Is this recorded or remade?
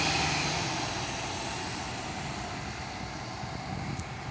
recorded